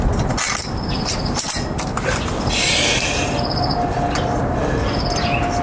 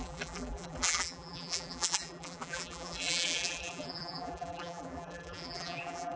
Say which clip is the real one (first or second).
first